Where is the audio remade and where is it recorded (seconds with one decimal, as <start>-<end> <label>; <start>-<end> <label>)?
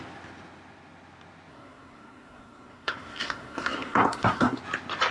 0.0-1.5 recorded; 1.5-4.6 remade; 4.6-5.1 recorded